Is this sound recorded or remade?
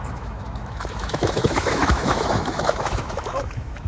remade